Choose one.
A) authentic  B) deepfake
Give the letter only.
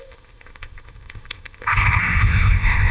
B